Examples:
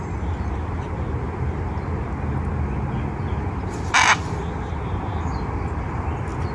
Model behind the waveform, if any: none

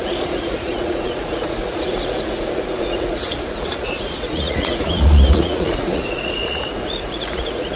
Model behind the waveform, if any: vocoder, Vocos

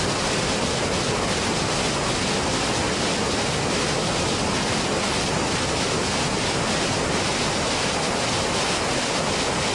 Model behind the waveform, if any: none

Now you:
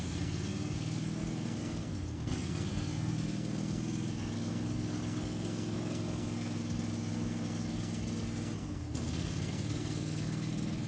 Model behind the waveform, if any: codec, SNAC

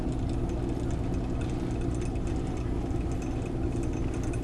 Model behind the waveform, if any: none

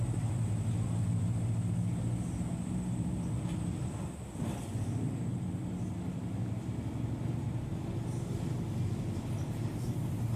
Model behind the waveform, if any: none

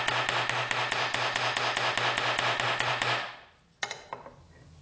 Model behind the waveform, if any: none